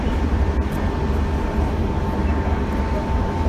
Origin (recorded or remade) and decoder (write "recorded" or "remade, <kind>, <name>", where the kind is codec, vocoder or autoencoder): recorded